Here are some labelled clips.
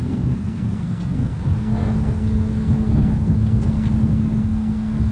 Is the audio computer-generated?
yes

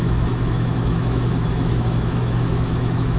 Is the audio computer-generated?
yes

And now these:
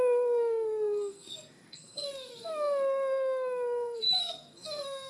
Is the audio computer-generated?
yes